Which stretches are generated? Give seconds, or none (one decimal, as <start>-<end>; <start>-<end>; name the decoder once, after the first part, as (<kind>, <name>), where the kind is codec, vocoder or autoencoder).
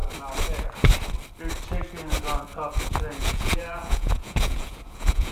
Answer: 3.2-5.3 (vocoder, Vocos)